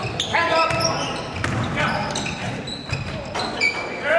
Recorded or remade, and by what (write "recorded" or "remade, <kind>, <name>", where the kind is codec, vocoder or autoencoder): recorded